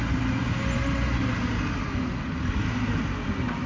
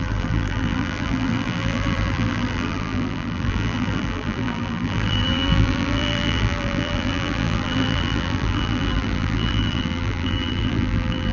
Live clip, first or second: first